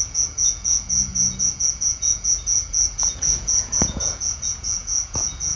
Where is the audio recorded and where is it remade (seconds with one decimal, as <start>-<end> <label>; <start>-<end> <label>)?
0.0-5.6 remade